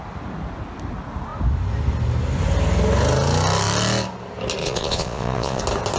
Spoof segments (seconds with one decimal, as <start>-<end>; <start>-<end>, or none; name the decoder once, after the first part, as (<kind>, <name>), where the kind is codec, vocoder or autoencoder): 4.6-5.6 (vocoder, Vocos)